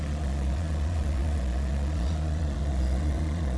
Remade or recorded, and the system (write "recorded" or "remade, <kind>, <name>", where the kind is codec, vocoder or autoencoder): remade, vocoder, Vocos